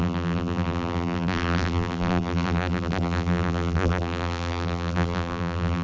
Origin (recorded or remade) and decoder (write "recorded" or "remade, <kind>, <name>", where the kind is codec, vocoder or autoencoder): remade, vocoder, BigVGAN v2